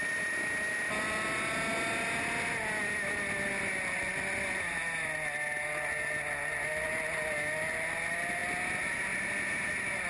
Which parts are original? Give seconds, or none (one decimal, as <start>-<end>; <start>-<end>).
0.0-10.1